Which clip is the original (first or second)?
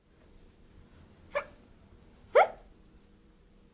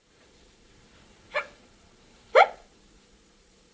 first